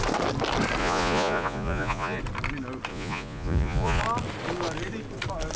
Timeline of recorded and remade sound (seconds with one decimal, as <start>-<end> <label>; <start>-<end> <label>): 0.0-0.8 recorded; 0.8-2.2 remade; 2.2-2.9 recorded; 2.9-4.0 remade; 4.0-5.6 recorded